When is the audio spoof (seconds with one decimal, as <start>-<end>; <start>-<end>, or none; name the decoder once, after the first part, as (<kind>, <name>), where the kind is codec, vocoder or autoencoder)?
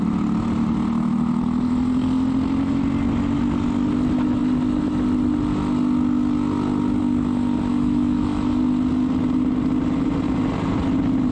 7.7-8.6 (autoencoder, DAC-VAE)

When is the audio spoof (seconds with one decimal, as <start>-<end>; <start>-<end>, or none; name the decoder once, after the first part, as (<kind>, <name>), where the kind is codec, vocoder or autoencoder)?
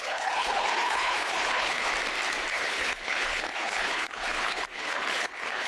0.0-1.9 (codec, HILCodec); 2.5-5.7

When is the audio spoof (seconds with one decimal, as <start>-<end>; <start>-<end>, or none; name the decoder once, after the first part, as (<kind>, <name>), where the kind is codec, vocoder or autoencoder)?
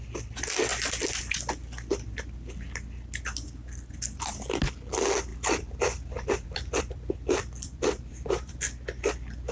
5.3-8.6 (vocoder, BigVGAN v2)